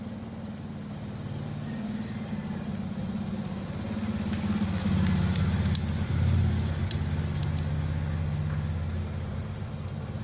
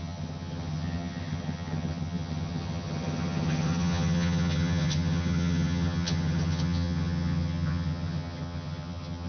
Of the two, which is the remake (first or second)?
second